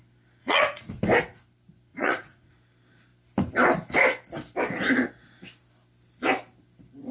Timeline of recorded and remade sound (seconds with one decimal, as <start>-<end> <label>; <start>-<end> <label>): 0.0-0.4 recorded; 0.4-0.9 remade; 0.9-1.9 recorded; 1.9-2.5 remade; 2.5-7.1 recorded